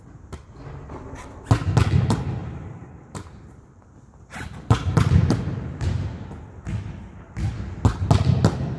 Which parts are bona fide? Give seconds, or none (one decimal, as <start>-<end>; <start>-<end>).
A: 0.0-2.4; 6.3-8.8